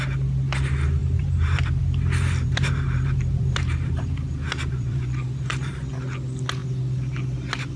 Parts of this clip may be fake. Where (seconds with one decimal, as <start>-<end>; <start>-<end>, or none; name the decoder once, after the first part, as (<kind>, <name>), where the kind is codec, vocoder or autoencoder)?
1.0-1.8 (vocoder, BigVGAN v2); 2.4-5.9